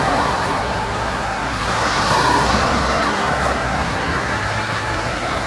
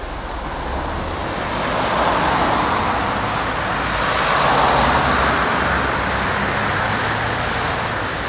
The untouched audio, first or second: second